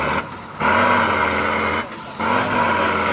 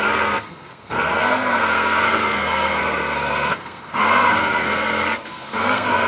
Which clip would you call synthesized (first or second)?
second